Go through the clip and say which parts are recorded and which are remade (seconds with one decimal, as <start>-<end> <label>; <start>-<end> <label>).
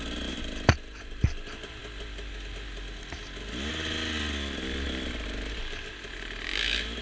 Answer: 0.0-7.0 recorded